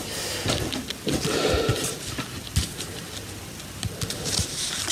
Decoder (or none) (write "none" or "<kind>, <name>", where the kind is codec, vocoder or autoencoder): none